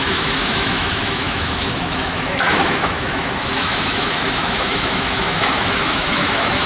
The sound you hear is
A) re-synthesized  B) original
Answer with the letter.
A